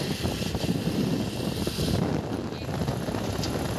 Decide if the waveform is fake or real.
real